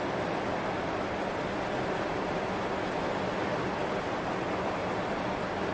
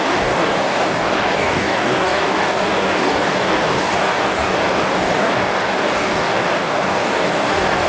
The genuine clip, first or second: first